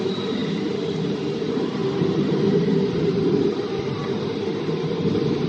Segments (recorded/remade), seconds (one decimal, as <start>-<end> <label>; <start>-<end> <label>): 0.0-4.0 remade; 4.0-4.5 recorded; 4.5-5.5 remade